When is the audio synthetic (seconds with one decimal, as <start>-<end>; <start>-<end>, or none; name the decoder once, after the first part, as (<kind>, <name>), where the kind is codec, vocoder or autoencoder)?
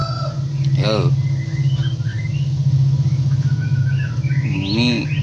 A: 2.1-4.1 (autoencoder, DAC-VAE)